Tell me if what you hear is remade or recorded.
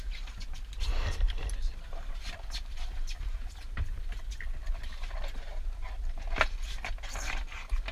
recorded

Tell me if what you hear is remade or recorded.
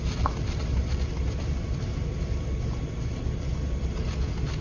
recorded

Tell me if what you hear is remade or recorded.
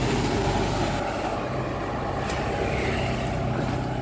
recorded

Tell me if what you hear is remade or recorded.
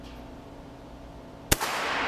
recorded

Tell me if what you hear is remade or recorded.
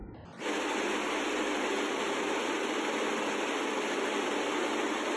recorded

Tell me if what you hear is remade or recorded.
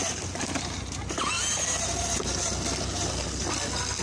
recorded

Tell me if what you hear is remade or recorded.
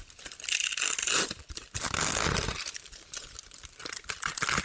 recorded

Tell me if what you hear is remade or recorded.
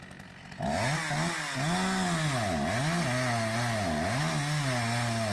recorded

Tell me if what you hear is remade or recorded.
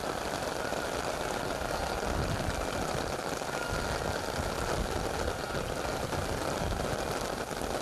recorded